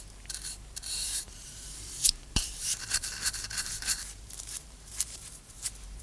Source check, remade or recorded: remade